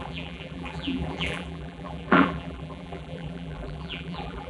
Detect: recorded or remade remade